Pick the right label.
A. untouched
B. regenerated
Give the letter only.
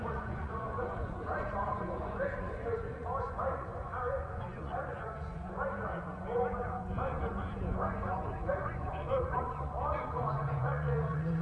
B